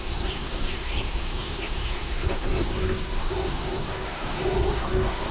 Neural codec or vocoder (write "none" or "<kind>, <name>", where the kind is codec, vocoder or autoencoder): codec, SNAC